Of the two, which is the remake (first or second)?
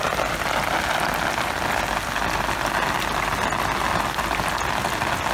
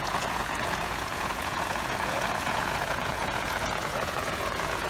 second